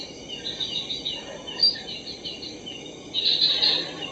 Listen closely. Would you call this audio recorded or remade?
recorded